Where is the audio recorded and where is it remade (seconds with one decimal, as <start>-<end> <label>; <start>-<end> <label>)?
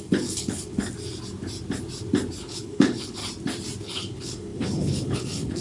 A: 0.0-0.8 remade; 0.8-2.4 recorded; 2.4-3.2 remade; 3.2-3.8 recorded; 3.8-5.6 remade